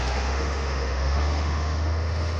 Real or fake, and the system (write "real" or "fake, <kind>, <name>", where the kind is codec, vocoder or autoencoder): fake, autoencoder, DAC-VAE